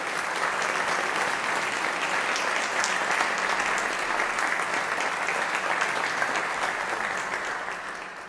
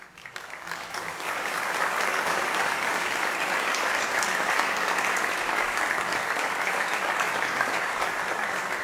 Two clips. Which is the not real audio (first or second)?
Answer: second